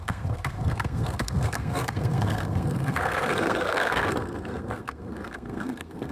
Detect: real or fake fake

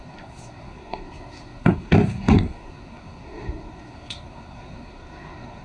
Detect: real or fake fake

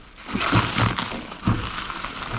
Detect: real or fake real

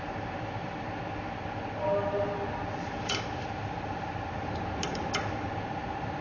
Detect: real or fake real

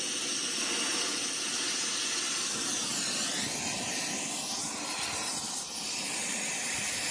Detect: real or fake real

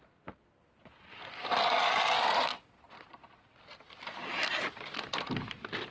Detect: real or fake real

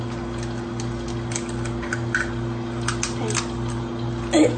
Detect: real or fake real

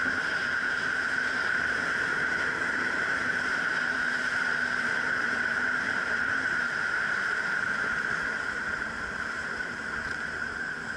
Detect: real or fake fake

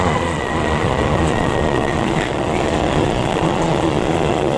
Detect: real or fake fake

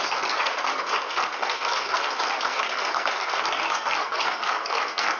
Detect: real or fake fake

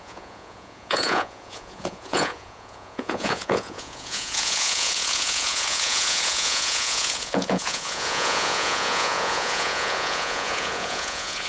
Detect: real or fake fake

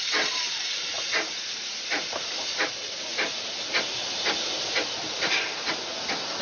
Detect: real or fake real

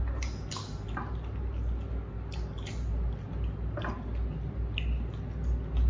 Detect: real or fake real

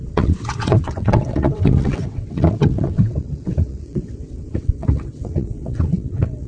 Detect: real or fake fake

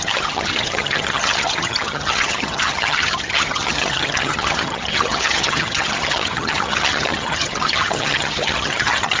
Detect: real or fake fake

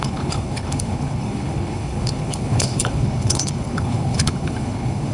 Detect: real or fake fake